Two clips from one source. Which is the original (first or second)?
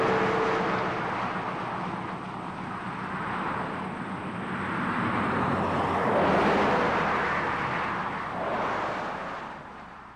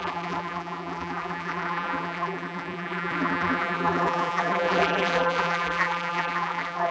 first